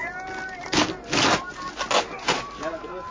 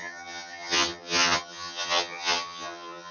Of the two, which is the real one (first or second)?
first